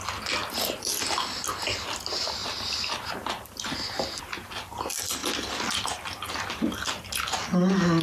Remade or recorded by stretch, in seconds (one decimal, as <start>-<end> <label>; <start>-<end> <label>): 0.0-2.4 recorded; 2.4-4.0 remade; 4.0-8.0 recorded